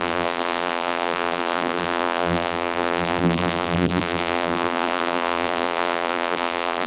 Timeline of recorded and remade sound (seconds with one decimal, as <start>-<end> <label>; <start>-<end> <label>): 0.0-6.9 remade